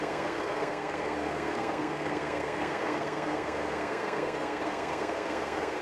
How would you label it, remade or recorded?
remade